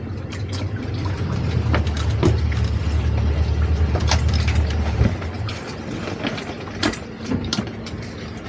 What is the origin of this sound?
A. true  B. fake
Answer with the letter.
A